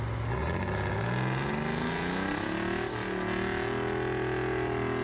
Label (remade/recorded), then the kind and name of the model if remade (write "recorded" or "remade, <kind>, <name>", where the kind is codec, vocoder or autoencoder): recorded